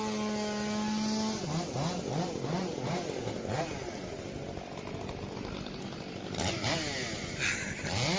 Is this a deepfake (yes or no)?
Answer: no